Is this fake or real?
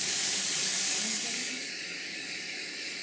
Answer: fake